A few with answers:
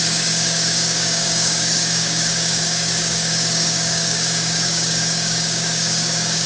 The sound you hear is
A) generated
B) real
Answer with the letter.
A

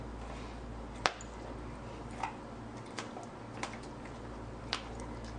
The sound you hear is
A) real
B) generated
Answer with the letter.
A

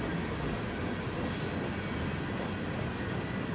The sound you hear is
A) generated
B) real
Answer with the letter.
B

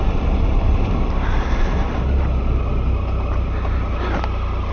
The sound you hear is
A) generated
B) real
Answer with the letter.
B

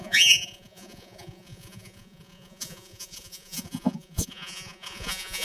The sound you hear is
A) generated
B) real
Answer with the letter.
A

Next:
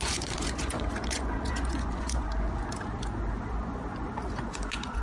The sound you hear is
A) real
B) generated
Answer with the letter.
B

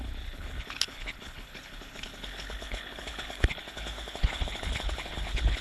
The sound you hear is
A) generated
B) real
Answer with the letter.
A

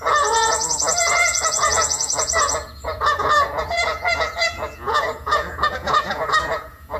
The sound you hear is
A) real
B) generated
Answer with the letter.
B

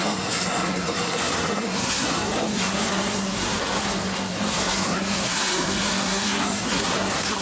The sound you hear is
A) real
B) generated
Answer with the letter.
B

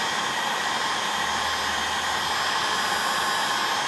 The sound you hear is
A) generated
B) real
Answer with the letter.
B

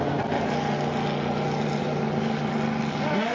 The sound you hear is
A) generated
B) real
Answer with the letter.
B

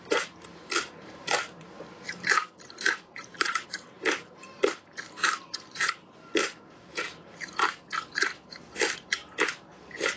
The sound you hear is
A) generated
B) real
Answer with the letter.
A